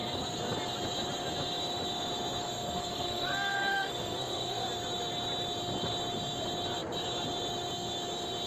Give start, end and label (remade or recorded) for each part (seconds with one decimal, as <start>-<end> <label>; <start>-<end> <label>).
0.0-2.4 recorded; 2.4-4.6 remade; 4.6-8.5 recorded